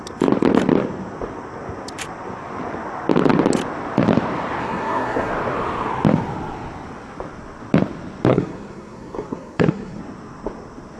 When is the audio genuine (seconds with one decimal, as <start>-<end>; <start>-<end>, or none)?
0.0-4.6; 5.3-8.3; 10.0-11.0